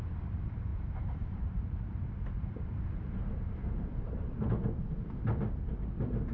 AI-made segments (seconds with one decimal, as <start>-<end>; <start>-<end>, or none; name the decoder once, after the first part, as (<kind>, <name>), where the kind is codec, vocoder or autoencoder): 0.7-4.5 (vocoder, BigVGAN v2)

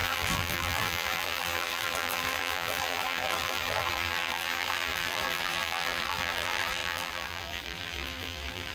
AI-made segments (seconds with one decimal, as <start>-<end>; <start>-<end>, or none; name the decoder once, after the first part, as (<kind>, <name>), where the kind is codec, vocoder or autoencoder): 0.0-8.7 (vocoder, BigVGAN v2)

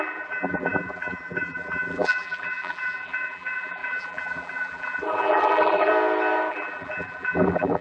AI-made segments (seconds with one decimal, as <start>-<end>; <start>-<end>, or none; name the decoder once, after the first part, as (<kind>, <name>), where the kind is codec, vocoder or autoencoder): 0.0-5.9 (vocoder, BigVGAN v2); 6.5-7.8

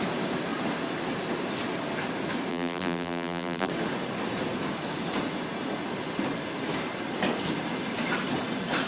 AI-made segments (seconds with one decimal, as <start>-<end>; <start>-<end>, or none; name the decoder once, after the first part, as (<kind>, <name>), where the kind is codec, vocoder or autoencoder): 2.5-3.7 (vocoder, BigVGAN v2)

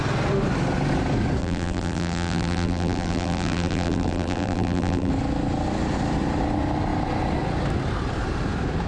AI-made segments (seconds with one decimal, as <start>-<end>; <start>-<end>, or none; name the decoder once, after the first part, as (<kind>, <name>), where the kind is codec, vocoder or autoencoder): 1.4-5.1 (vocoder, BigVGAN v2)

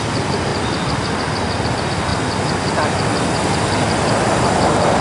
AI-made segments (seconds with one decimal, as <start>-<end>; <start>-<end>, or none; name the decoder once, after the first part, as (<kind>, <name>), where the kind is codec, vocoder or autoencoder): 0.5-1.2 (vocoder, BigVGAN v2); 2.1-2.7